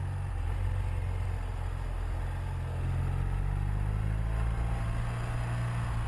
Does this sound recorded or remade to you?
recorded